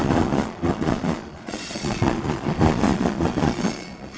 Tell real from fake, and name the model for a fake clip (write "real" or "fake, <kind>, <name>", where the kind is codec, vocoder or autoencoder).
fake, vocoder, Vocos